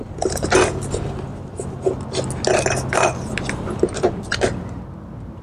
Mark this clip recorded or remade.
recorded